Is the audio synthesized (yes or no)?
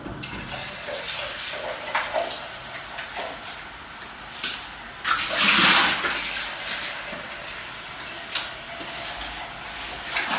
no